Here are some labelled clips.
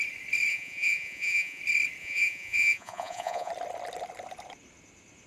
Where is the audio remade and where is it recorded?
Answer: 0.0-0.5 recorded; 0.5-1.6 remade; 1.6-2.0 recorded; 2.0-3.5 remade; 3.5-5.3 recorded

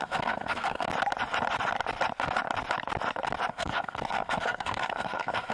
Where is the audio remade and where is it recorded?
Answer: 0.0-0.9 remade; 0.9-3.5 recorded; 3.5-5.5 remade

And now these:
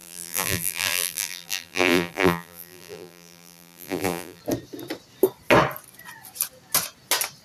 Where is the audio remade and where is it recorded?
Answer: 0.0-4.4 remade; 4.4-7.4 recorded

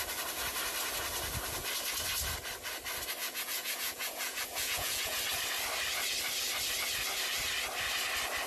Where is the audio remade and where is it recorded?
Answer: 0.0-3.2 recorded; 3.2-5.2 remade; 5.2-8.5 recorded

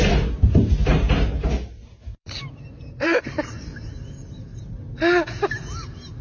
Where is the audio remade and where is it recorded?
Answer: 0.0-0.9 recorded; 0.9-4.6 remade; 4.6-6.2 recorded

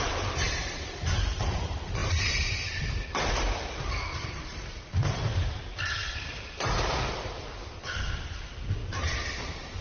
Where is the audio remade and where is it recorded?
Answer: 0.0-5.7 remade; 5.7-8.2 recorded; 8.2-8.8 remade; 8.8-9.4 recorded; 9.4-9.8 remade

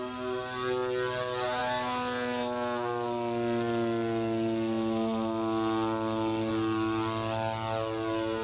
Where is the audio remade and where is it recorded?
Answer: 0.0-8.4 recorded

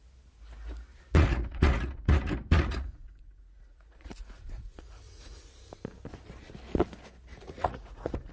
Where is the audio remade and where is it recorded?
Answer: 0.0-1.1 recorded; 1.1-5.5 remade; 5.5-7.3 recorded; 7.3-8.3 remade